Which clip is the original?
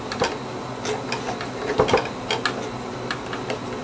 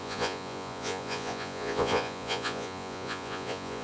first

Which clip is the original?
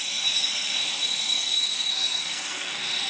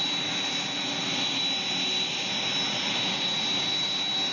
second